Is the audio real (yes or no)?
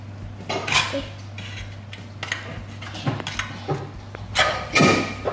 yes